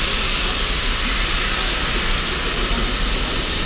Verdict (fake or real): real